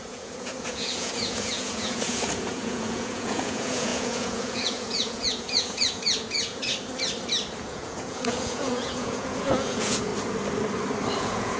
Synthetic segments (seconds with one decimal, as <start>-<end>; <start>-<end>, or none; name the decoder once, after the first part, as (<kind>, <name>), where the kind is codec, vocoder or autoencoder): 0.0-6.7 (vocoder, Vocos); 7.6-10.1; 11.2-11.6